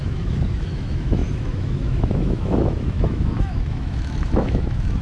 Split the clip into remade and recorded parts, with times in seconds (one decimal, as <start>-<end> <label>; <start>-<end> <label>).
0.0-5.0 remade